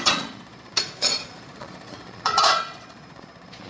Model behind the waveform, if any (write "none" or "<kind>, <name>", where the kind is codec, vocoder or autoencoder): vocoder, Vocos